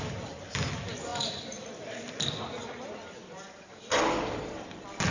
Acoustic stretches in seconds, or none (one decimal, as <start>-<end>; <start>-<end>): 0.0-1.1; 1.7-3.2; 3.8-5.1